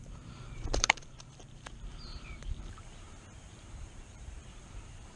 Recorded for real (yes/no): no